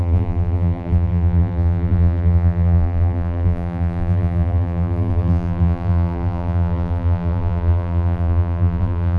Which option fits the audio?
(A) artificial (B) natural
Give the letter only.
A